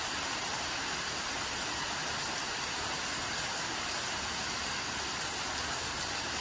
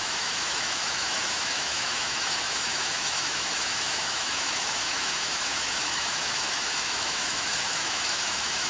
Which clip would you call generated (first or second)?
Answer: second